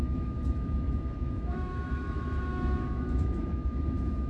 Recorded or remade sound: remade